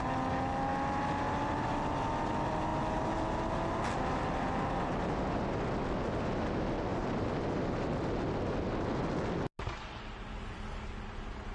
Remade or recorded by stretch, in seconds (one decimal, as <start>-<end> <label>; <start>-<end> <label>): 0.0-6.9 recorded; 6.9-7.4 remade; 7.4-11.5 recorded